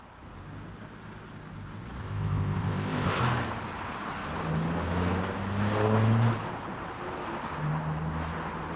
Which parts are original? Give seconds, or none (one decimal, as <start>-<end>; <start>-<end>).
0.0-2.0; 3.2-8.8